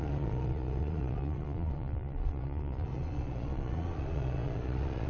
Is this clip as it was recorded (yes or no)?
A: no